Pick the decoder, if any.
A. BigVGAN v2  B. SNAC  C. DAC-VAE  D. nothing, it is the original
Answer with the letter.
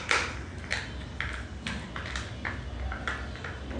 D